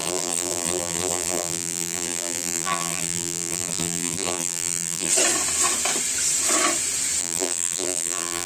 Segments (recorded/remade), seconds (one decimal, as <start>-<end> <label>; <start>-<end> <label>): 0.0-5.1 remade; 5.1-7.2 recorded; 7.2-8.5 remade